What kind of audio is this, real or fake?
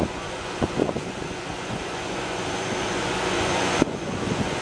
fake